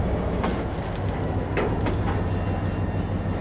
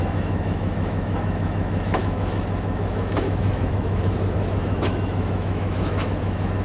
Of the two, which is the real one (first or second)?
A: first